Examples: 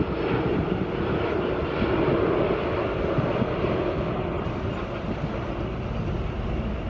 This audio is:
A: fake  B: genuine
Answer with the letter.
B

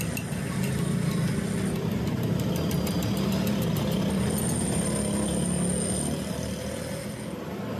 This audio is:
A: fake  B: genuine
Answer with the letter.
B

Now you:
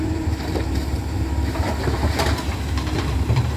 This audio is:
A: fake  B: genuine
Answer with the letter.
A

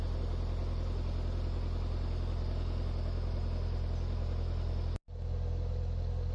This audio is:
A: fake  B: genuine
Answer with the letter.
B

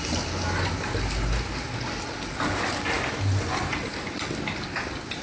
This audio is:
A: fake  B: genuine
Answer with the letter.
B